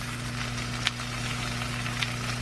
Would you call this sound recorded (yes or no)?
yes